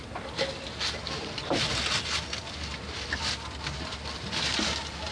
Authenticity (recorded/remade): recorded